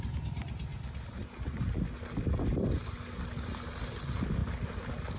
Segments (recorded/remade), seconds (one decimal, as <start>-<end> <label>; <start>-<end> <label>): 0.0-5.2 recorded